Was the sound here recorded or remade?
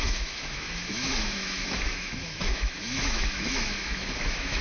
remade